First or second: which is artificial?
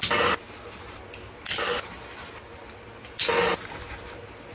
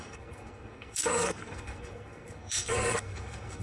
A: second